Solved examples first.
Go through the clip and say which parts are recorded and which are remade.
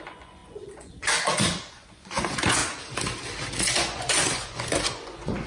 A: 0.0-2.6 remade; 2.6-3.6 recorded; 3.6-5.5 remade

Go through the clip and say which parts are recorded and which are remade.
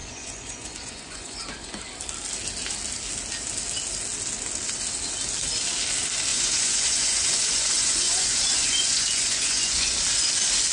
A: 0.0-1.8 remade; 1.8-6.3 recorded; 6.3-9.9 remade; 9.9-10.7 recorded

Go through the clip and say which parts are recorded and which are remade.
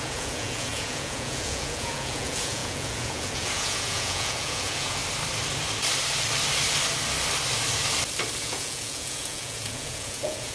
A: 0.0-5.0 remade; 5.0-8.4 recorded; 8.4-10.5 remade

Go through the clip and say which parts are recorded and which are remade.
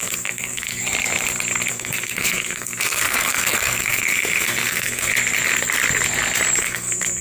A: 0.0-0.8 remade; 0.8-1.7 recorded; 1.7-5.1 remade; 5.1-6.6 recorded; 6.6-7.2 remade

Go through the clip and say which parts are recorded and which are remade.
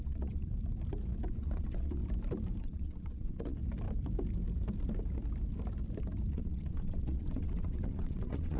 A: 0.0-0.5 remade; 0.5-1.3 recorded; 1.3-2.0 remade; 2.0-2.6 recorded; 2.6-3.6 remade; 3.6-6.3 recorded; 6.3-8.6 remade